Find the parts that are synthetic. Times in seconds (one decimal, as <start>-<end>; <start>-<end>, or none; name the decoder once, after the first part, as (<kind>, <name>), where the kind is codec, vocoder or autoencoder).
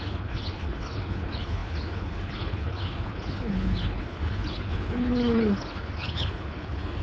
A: 0.0-7.0 (codec, HILCodec)